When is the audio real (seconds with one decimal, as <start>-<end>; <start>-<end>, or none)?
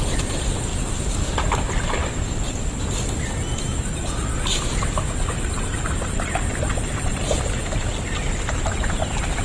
0.0-9.4